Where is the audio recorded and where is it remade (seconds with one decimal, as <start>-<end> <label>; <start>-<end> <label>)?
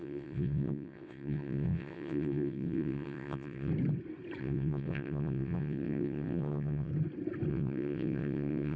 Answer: 0.0-3.7 remade; 3.7-4.4 recorded; 4.4-6.9 remade; 6.9-7.5 recorded; 7.5-8.8 remade